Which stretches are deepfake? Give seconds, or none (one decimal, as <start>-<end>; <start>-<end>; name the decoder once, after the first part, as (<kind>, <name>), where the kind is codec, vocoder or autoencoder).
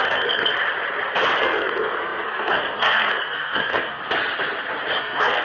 0.0-0.5 (codec, SNAC); 1.4-4.0; 5.0-5.4